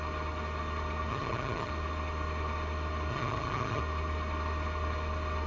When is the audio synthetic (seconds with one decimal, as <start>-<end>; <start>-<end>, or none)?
1.1-1.7; 3.1-3.8